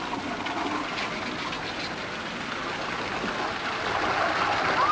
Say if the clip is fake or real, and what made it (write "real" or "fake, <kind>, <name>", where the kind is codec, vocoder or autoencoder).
real